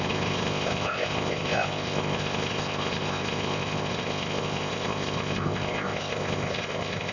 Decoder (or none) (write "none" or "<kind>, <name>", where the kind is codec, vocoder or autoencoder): codec, ZipCodec